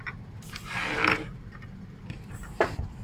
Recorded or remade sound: recorded